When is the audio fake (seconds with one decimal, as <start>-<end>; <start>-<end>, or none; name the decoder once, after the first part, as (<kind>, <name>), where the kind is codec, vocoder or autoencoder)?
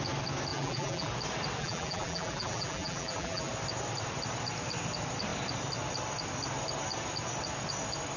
0.5-1.1 (vocoder, BigVGAN v2); 1.6-3.5